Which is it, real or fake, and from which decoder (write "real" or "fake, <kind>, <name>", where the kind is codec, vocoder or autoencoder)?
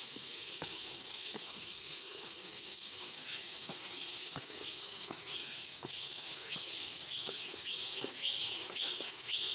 fake, codec, SNAC